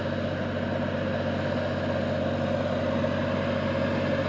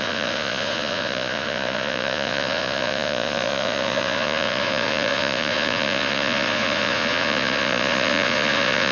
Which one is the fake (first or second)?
second